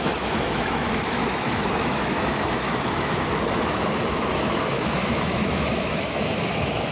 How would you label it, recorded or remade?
remade